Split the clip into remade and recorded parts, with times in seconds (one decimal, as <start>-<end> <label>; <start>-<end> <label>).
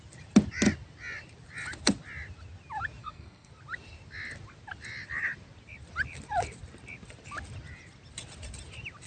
0.0-3.0 recorded; 3.0-3.5 remade; 3.5-9.1 recorded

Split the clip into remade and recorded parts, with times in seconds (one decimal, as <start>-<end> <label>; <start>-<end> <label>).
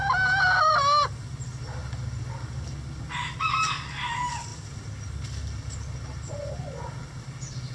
0.0-7.7 recorded